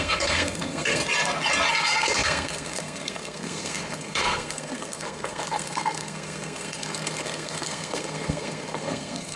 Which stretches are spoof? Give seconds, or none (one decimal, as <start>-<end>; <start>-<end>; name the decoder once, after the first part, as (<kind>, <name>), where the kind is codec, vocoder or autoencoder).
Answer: 0.0-1.0 (codec, SNAC); 1.7-9.4